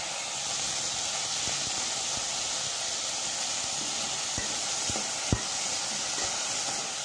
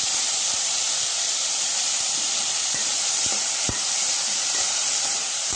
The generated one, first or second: second